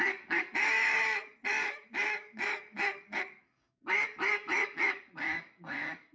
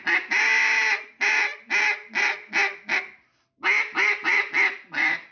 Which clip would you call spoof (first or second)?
first